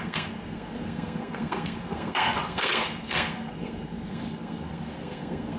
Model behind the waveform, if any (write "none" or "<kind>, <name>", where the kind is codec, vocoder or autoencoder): codec, SNAC